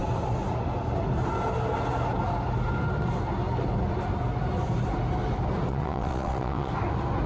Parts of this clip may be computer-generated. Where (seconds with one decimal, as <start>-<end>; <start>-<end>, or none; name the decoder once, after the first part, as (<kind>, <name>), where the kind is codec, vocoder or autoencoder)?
5.7-6.7 (vocoder, WaveNeXt)